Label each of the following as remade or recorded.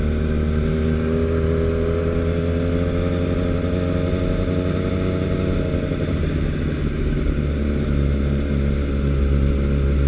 recorded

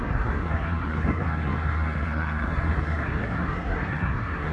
remade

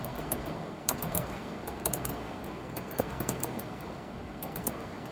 remade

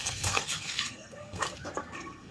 remade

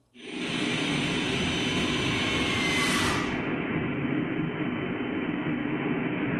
recorded